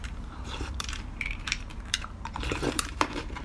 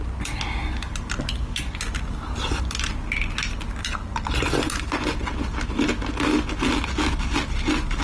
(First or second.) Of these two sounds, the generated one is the first